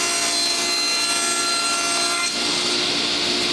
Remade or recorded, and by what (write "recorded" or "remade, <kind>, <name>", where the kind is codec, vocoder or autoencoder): recorded